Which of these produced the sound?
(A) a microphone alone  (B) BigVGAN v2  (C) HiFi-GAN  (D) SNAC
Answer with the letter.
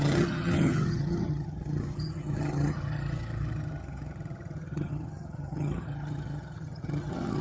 C